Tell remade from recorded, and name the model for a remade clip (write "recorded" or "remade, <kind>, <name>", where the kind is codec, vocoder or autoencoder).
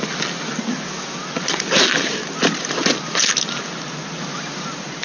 recorded